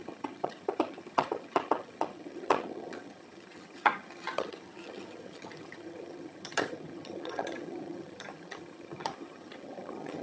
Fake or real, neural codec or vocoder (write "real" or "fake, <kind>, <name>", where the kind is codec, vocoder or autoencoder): fake, vocoder, HiFi-GAN